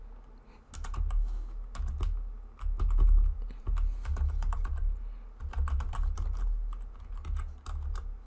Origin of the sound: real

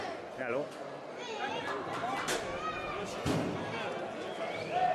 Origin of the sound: real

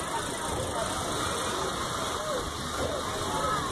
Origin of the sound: real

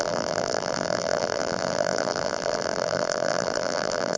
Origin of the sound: fake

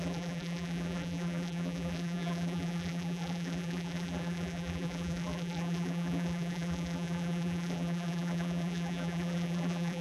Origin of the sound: fake